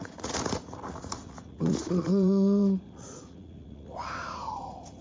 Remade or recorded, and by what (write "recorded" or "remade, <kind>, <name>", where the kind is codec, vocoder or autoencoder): remade, vocoder, Vocos